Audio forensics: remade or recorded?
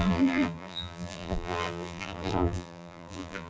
remade